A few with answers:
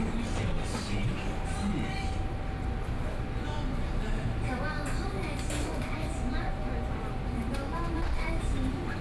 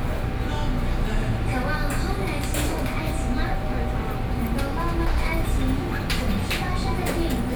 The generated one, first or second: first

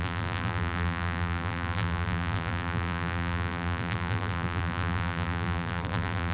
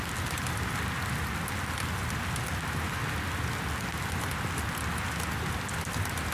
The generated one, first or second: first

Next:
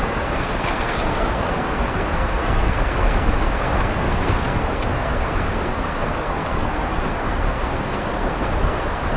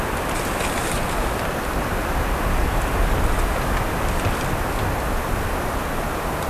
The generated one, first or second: first